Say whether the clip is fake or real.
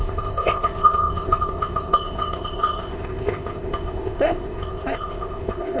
fake